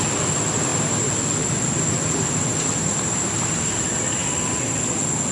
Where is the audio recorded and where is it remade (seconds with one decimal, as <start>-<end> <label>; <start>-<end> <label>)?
0.0-5.3 recorded